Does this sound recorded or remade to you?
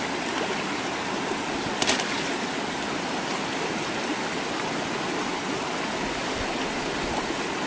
recorded